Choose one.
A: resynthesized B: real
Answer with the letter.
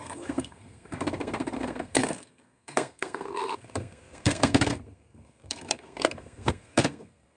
A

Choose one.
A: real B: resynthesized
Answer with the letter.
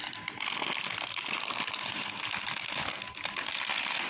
A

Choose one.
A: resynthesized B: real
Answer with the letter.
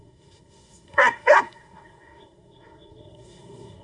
A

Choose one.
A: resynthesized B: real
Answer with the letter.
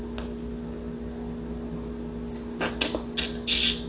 B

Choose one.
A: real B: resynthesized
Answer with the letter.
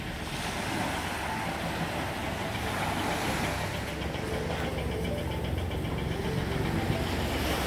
A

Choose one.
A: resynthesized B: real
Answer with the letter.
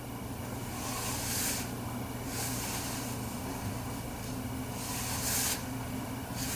B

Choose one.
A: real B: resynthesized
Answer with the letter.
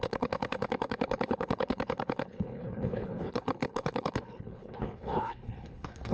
B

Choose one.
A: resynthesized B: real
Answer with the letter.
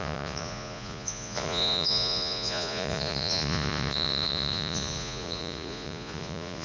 A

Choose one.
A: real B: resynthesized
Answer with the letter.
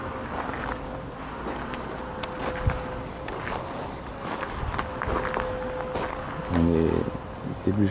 A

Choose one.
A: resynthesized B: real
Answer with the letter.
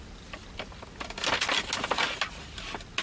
B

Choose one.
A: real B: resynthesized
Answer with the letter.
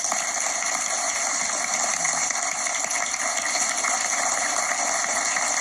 A